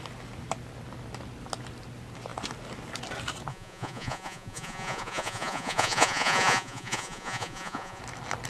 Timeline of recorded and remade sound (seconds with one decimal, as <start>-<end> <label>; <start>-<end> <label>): 0.0-3.5 recorded; 3.5-8.0 remade; 8.0-8.5 recorded